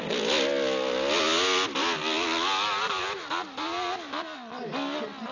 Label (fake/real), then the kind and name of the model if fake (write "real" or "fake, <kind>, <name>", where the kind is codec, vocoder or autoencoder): real